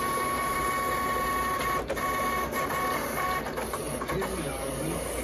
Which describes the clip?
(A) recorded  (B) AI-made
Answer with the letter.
A